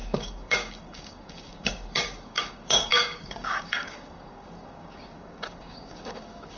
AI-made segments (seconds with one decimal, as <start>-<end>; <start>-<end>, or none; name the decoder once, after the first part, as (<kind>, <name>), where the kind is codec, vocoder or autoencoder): 0.0-6.6 (codec, DAC)